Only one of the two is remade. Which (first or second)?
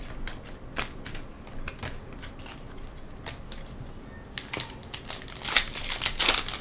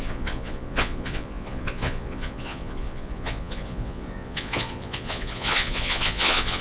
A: second